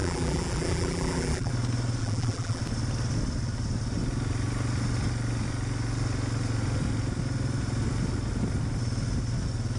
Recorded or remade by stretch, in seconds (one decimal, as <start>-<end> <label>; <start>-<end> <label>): 0.0-1.5 remade; 1.5-2.0 recorded; 2.0-2.6 remade; 2.6-9.8 recorded